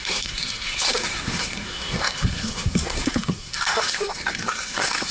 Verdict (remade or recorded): remade